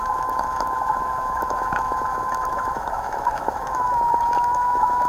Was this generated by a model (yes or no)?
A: yes